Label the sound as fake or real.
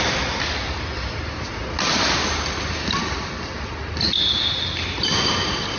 real